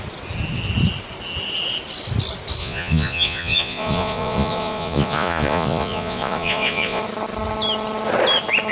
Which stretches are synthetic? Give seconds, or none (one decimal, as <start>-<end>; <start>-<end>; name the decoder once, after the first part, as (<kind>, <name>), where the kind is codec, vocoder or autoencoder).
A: 2.6-7.0 (vocoder, Vocos)